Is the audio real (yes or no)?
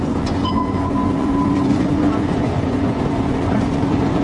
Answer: no